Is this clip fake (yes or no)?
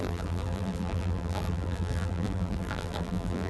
yes